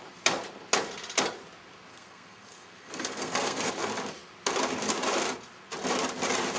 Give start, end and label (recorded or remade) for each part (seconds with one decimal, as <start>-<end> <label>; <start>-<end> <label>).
0.0-1.9 recorded; 1.9-3.7 remade; 3.7-6.6 recorded